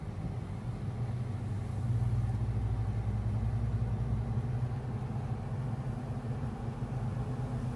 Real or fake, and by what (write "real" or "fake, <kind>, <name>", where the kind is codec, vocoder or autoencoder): real